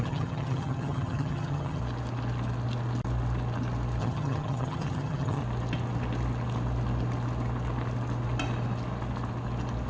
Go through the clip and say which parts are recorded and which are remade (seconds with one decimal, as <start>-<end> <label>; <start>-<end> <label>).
0.0-1.8 remade; 1.8-4.0 recorded; 4.0-5.4 remade; 5.4-9.9 recorded